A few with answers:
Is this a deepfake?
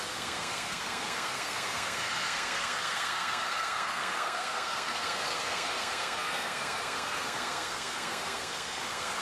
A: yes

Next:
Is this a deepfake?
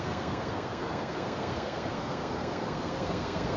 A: yes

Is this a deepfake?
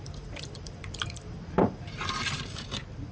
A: yes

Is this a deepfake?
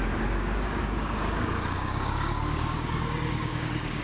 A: yes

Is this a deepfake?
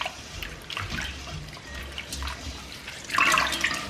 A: yes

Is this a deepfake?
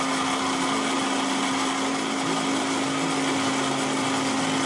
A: no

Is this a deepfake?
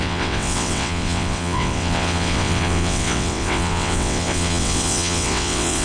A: yes